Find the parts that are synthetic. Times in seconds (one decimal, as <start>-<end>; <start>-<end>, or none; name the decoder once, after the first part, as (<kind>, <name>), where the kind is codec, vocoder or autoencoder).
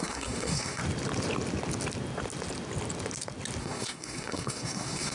0.0-0.8 (codec, SNAC); 3.6-5.1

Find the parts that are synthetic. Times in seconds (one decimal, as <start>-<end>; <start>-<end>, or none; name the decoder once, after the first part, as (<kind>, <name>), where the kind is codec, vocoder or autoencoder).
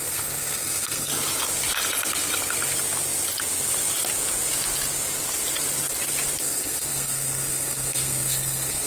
0.0-1.1 (codec, SNAC); 6.4-8.9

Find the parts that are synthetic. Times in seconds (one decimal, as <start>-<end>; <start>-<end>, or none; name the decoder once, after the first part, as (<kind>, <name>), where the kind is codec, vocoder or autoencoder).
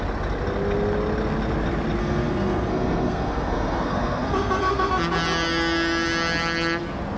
2.0-4.9 (codec, SNAC)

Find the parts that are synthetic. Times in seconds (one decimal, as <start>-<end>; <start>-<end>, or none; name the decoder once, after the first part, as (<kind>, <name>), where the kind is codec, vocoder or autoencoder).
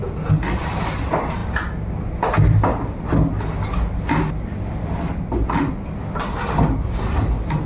none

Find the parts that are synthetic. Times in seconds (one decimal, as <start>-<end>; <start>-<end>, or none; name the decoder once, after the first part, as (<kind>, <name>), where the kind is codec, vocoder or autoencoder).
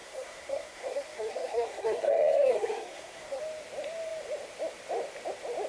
0.0-3.4 (codec, SNAC)